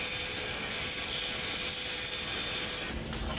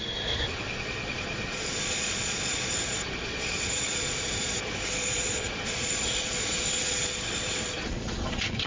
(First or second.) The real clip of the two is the first